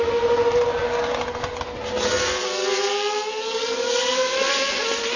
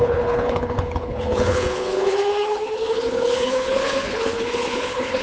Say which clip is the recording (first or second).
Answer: first